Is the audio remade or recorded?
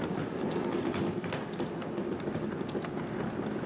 recorded